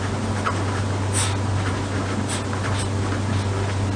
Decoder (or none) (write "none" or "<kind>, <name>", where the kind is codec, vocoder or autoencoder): none